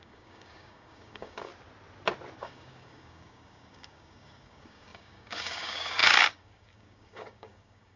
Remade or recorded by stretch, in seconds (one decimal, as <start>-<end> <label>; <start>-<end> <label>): 0.0-1.5 remade; 1.5-2.4 recorded; 2.4-8.0 remade